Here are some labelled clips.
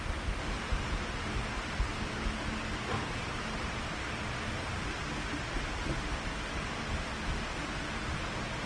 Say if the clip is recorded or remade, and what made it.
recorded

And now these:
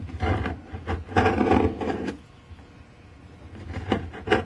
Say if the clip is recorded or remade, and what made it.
recorded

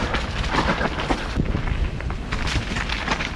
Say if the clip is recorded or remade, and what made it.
recorded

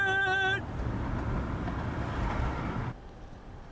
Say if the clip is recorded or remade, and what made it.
recorded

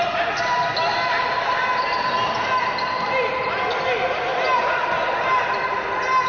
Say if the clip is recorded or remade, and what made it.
recorded